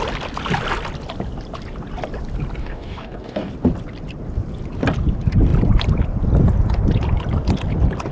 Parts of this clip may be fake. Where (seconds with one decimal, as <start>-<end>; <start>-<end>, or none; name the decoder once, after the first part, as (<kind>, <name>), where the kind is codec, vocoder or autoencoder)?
2.6-3.5 (codec, DAC)